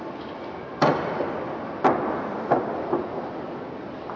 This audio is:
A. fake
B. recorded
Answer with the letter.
B